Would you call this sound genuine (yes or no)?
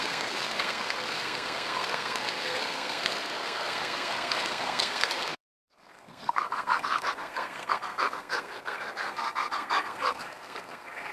no